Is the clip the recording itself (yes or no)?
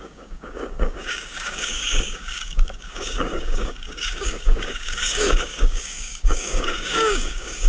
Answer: no